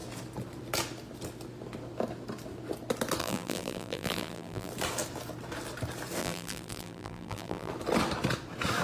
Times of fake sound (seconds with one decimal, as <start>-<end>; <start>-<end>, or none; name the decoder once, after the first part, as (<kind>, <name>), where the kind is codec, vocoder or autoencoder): 3.2-4.7 (vocoder, BigVGAN v2); 6.2-7.7